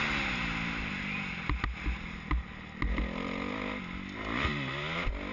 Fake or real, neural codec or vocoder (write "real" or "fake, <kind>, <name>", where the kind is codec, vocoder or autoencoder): real